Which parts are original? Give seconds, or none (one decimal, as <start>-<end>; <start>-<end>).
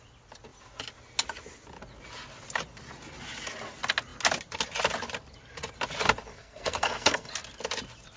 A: 0.0-6.3; 7.3-8.2